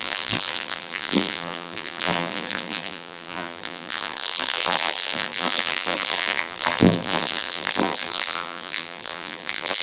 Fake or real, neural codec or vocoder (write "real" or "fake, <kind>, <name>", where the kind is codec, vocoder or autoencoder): fake, vocoder, BigVGAN v2